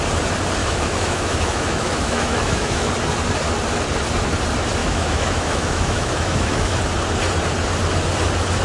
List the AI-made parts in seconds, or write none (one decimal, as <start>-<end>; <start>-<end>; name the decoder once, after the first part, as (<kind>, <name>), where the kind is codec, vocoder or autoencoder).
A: 0.6-2.9 (autoencoder, DAC-VAE); 4.8-6.8